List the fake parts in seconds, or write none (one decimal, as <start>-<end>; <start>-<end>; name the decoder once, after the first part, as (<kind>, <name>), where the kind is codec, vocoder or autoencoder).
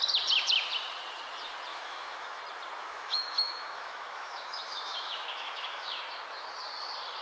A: 1.7-2.4 (autoencoder, DAC-VAE); 2.8-6.0